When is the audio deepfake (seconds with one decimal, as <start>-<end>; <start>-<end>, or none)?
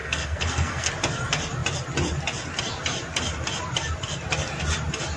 0.0-0.9